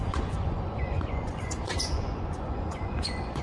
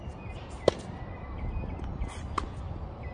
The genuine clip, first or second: second